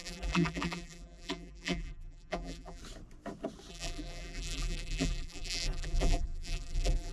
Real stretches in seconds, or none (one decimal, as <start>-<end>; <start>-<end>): 2.8-3.7